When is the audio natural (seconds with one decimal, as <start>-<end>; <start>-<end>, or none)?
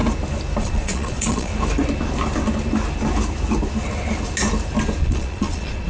0.0-0.6; 1.5-5.0